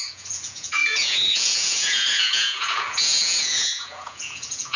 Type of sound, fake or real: fake